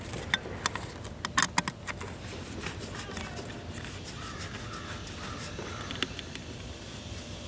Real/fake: real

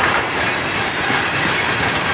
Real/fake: real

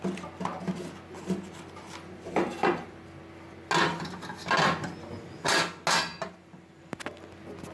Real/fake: real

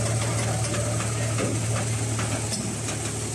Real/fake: real